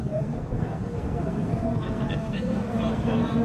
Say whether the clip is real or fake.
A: fake